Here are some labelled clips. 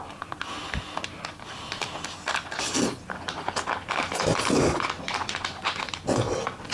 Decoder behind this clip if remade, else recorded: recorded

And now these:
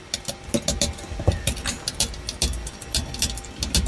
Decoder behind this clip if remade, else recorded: recorded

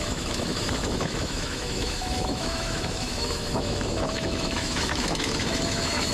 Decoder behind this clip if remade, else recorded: remade, autoencoder, DAC-VAE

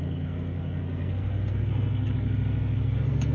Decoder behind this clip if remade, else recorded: remade, codec, SNAC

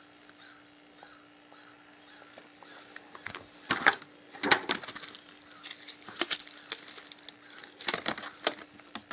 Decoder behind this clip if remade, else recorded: recorded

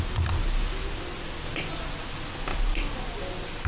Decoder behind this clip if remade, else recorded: recorded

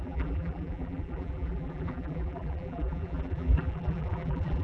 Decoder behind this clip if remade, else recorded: remade, vocoder, BigVGAN v2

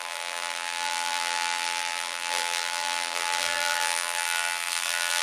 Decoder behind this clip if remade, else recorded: remade, vocoder, BigVGAN v2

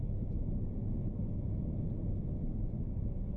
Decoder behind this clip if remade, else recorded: recorded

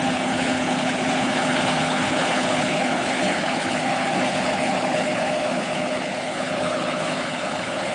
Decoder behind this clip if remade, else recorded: remade, codec, HILCodec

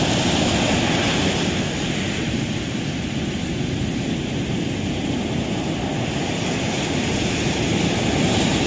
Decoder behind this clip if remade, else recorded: recorded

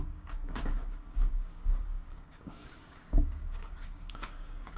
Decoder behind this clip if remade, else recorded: remade, codec, DAC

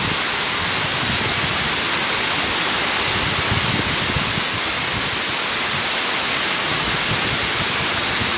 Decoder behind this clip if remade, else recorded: recorded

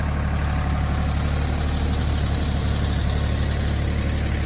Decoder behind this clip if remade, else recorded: recorded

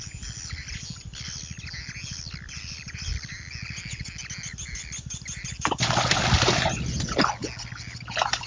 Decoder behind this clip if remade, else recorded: recorded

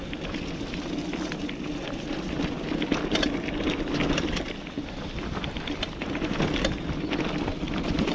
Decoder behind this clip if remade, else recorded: recorded